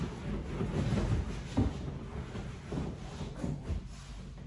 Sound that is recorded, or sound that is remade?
recorded